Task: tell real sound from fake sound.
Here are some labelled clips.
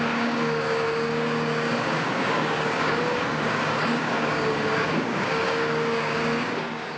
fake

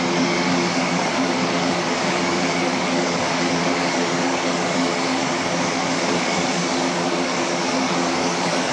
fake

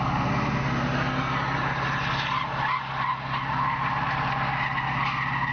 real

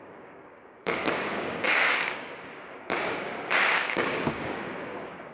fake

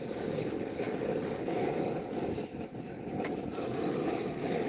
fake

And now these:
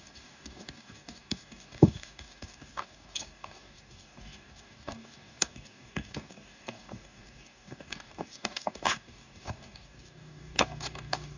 fake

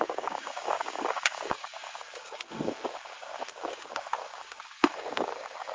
fake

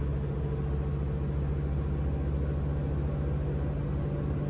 real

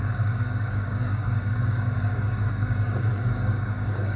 fake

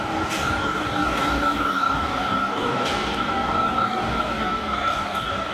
fake